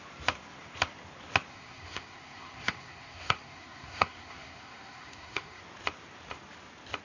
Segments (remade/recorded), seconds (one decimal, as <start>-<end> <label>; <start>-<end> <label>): 0.0-1.5 recorded; 1.5-5.6 remade; 5.6-7.0 recorded